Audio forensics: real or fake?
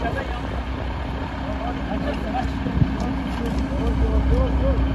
real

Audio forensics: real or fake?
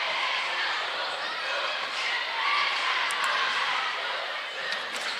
fake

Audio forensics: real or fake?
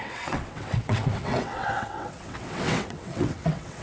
fake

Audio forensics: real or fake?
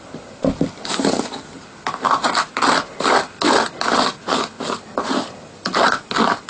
real